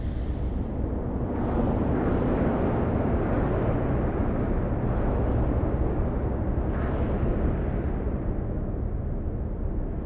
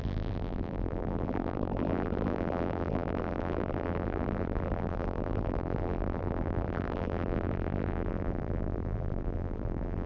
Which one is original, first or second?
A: first